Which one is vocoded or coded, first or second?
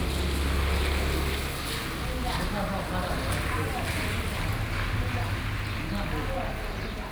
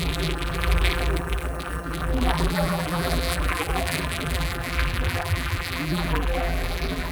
second